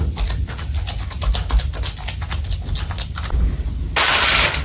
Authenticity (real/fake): real